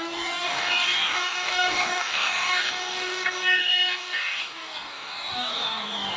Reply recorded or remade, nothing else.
remade